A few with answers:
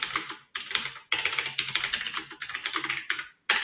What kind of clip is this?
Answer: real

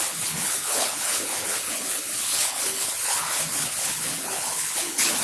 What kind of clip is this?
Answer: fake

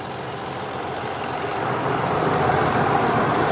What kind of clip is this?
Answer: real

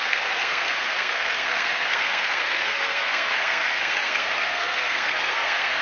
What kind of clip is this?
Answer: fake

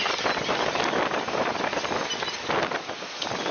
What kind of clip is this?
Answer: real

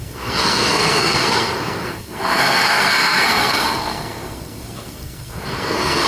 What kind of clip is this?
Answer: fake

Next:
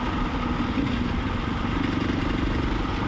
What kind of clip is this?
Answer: real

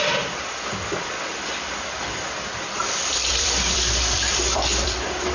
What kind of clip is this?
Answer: fake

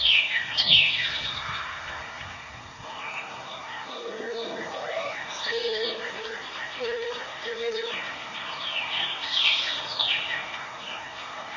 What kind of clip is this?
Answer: fake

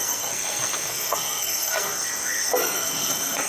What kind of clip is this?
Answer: fake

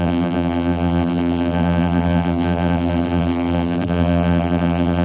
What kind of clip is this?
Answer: fake